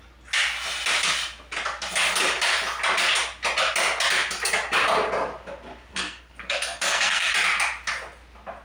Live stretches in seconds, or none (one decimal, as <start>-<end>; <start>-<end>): 0.0-5.9; 7.3-8.6